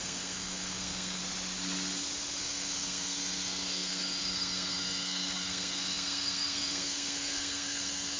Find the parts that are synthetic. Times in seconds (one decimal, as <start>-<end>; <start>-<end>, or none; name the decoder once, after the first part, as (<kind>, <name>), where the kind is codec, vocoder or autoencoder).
0.0-1.2 (codec, SNAC); 2.4-8.2